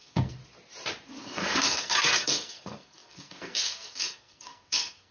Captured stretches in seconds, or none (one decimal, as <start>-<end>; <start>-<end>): 0.4-1.2

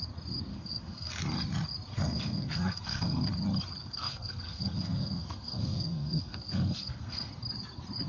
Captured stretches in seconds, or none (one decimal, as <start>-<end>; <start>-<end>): 0.0-0.5; 1.1-1.9; 3.3-3.8; 7.3-8.1

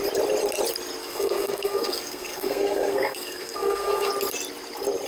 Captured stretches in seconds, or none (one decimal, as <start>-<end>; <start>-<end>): 0.0-1.0; 4.1-5.1

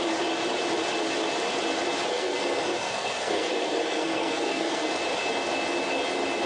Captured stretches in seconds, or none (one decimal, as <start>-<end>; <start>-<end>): 0.0-2.1; 4.9-6.5

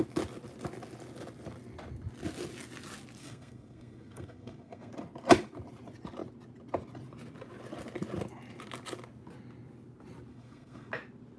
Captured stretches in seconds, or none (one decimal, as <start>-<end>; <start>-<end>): 0.0-3.2; 4.9-10.3; 10.9-11.4